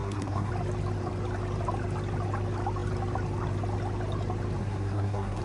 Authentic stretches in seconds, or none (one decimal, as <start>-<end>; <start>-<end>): 0.5-4.6